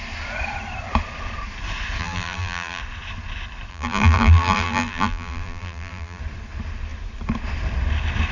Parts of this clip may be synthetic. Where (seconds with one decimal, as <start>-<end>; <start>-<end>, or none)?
2.0-2.8; 3.7-6.2